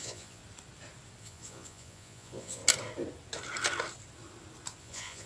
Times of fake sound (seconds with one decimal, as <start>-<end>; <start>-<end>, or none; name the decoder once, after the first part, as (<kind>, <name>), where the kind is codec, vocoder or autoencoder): 0.0-0.4 (vocoder, Vocos); 1.2-2.6; 4.8-5.3